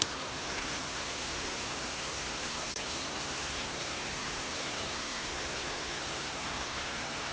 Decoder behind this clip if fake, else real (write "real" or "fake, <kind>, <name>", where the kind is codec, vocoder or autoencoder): fake, codec, SNAC